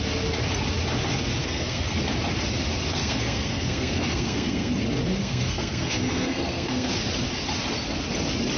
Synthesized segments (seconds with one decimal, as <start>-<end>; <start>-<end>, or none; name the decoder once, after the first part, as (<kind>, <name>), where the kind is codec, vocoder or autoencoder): 1.4-2.0 (codec, SNAC); 2.9-4.7; 5.2-6.9